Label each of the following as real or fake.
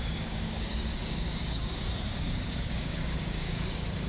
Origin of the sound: fake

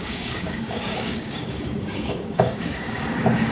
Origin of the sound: fake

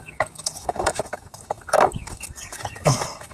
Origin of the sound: fake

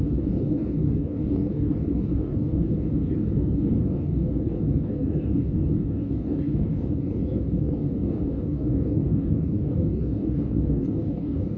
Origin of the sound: fake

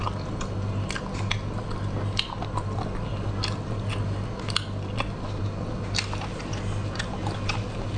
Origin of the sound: real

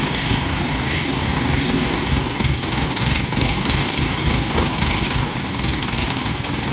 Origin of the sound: fake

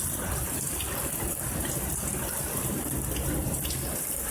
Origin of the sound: real